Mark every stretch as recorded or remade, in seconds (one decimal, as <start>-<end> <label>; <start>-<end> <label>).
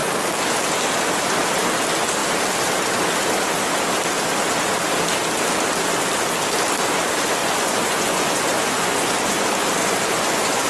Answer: 0.0-7.4 recorded; 7.4-9.1 remade; 9.1-9.8 recorded; 9.8-10.7 remade